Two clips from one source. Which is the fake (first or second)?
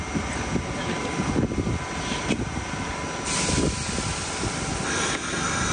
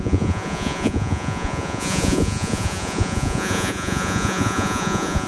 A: second